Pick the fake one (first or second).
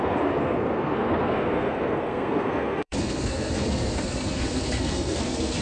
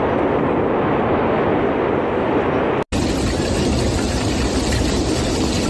first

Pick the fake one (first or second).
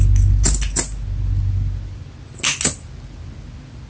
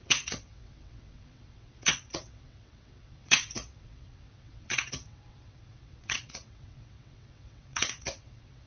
second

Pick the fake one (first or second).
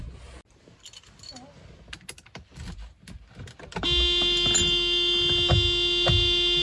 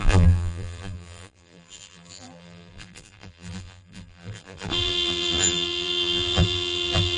second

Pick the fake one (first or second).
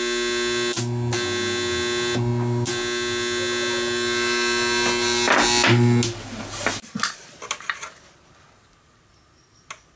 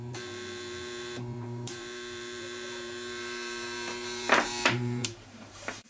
second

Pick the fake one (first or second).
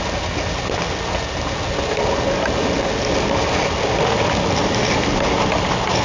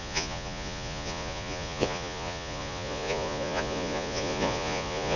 second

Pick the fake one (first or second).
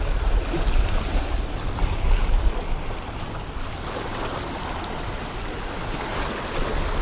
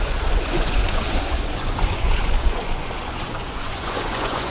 second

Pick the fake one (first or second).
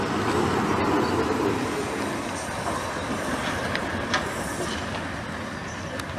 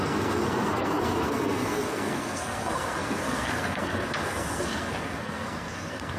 second